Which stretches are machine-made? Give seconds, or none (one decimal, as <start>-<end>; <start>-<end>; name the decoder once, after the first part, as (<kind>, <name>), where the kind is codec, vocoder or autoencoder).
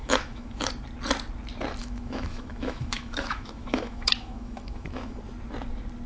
0.0-0.7 (autoencoder, DAC-VAE); 1.8-5.2